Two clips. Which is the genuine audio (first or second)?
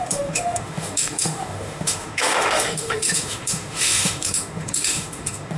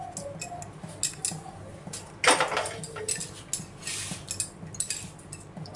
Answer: second